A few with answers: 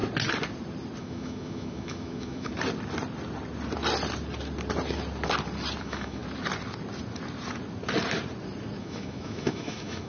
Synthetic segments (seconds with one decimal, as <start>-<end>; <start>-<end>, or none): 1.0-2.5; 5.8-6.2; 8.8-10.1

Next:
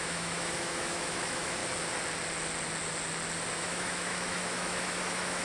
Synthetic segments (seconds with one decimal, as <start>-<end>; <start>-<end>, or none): 0.0-1.6; 3.5-5.4

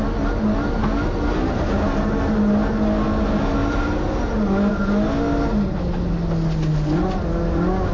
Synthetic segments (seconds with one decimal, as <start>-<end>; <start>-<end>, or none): none

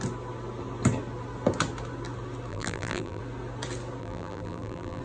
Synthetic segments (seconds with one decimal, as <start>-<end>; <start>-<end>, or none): 2.5-3.2; 4.0-5.0